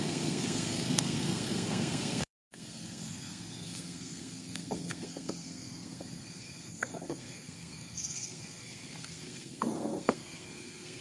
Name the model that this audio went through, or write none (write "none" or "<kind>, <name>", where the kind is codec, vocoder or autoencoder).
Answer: codec, SNAC